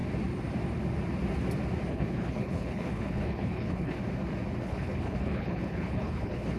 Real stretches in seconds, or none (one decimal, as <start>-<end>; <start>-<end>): 0.0-1.9; 4.0-4.6